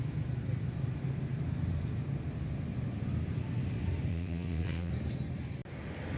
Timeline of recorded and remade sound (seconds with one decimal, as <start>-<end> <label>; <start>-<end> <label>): 0.0-4.1 recorded; 4.1-4.9 remade; 4.9-6.2 recorded